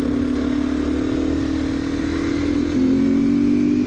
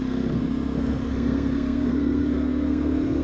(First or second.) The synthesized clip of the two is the second